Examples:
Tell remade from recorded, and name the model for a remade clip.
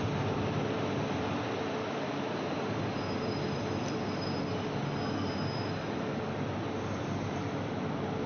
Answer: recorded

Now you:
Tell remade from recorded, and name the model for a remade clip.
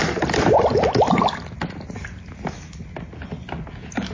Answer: recorded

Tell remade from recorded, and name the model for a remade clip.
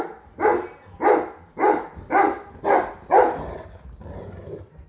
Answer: recorded